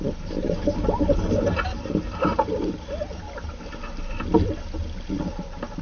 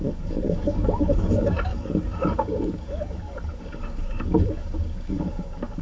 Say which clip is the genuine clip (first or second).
first